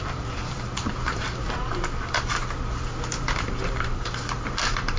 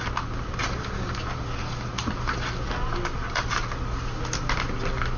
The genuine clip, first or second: second